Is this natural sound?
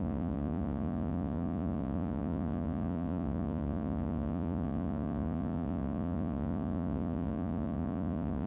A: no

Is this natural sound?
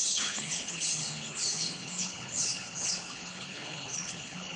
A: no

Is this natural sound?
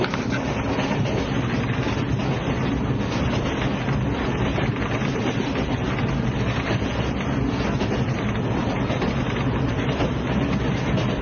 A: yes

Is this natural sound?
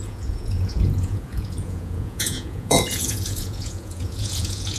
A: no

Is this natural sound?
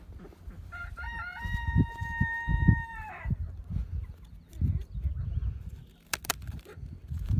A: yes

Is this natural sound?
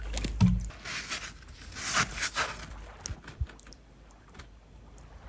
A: yes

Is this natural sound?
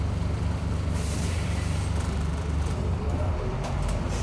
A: no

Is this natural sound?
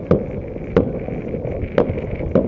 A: yes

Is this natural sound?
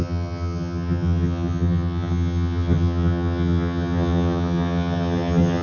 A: no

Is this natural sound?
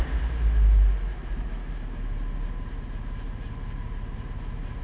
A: yes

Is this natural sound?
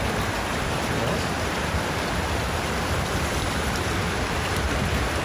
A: no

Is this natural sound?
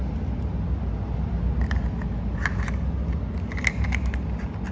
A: yes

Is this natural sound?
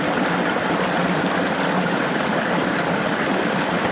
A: yes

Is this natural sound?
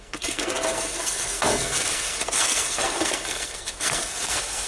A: no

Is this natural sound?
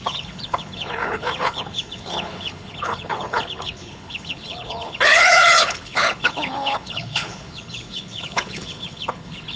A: no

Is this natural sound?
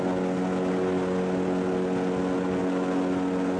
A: yes